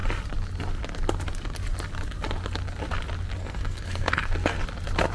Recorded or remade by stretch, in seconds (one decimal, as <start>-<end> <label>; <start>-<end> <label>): 0.0-3.4 recorded; 3.4-4.6 remade; 4.6-5.1 recorded